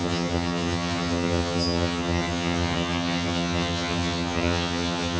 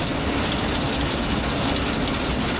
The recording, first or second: second